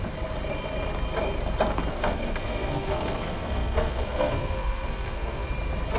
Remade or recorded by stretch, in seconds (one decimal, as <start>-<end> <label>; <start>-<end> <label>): 0.0-1.9 recorded; 1.9-5.5 remade; 5.5-6.0 recorded